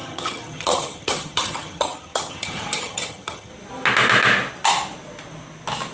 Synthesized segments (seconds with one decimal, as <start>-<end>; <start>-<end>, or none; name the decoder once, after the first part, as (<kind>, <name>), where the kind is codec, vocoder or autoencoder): 0.0-3.5 (vocoder, HiFi-GAN)